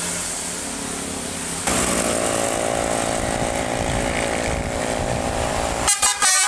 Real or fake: real